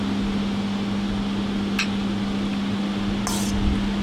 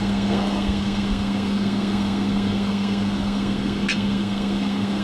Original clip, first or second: first